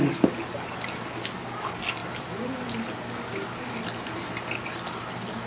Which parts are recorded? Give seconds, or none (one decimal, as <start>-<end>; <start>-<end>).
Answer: 0.0-5.5